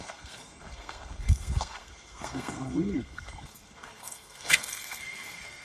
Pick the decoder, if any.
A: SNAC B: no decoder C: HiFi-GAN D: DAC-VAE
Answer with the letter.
A